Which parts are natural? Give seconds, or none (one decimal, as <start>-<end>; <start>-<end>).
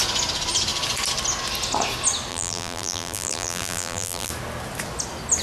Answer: 0.0-2.3; 4.3-5.4